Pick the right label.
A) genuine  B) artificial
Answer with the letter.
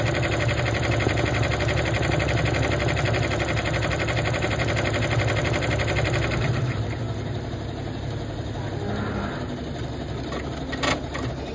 A